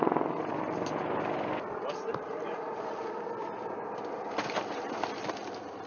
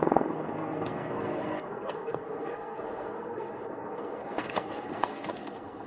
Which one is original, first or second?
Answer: first